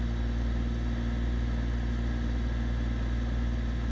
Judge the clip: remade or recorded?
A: recorded